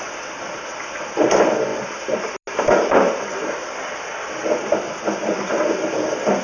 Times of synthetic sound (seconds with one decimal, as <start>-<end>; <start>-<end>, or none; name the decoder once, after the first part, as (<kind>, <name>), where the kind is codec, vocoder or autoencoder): none